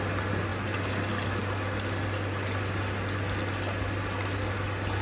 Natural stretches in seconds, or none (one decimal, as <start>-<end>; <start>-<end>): 0.0-5.0